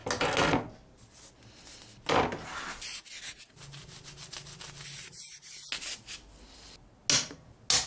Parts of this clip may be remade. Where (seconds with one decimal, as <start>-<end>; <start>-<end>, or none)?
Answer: none